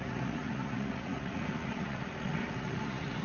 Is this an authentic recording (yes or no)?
no